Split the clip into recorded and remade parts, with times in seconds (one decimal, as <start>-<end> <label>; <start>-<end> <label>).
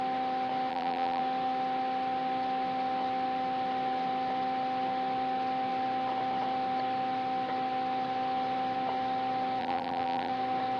0.0-0.7 recorded; 0.7-1.2 remade; 1.2-9.6 recorded; 9.6-10.3 remade; 10.3-10.8 recorded